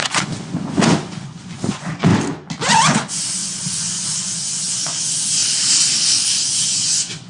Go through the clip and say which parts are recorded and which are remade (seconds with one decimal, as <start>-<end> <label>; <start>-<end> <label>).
0.0-2.1 remade; 2.1-2.7 recorded; 2.7-5.4 remade; 5.4-6.5 recorded; 6.5-7.3 remade